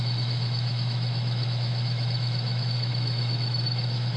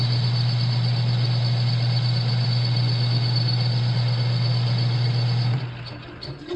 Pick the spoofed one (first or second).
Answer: first